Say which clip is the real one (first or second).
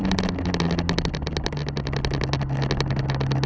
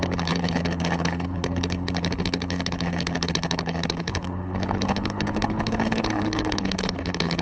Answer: first